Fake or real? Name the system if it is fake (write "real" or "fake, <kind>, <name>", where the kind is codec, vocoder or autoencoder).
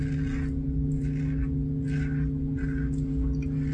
real